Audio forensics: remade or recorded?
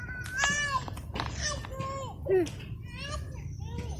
recorded